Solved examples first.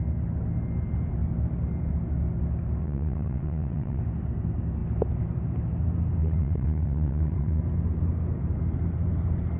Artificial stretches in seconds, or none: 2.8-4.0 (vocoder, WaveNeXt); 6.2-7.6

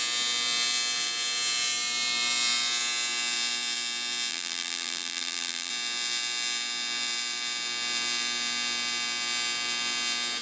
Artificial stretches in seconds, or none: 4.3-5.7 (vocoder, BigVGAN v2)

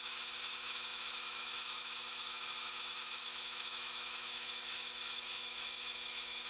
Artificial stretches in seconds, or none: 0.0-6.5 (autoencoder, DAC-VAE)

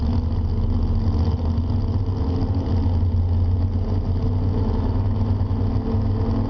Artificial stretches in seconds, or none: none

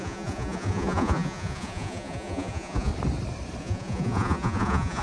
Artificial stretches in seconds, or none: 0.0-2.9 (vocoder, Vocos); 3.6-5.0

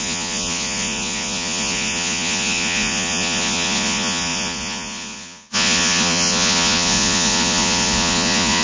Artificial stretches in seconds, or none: 0.0-8.6 (vocoder, Vocos)

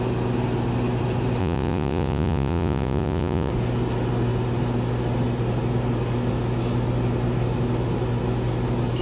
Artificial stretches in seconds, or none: 1.4-3.5 (vocoder, Vocos)